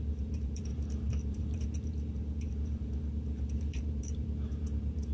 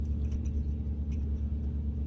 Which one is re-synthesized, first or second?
first